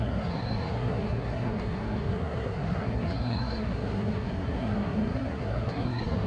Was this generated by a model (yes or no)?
yes